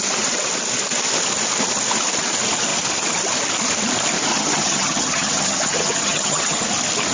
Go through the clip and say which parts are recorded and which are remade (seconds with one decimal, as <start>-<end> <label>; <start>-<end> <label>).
0.0-4.3 recorded; 4.3-6.6 remade; 6.6-7.1 recorded